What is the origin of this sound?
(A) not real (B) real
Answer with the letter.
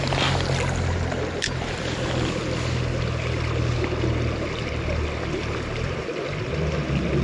B